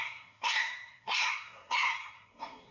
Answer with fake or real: fake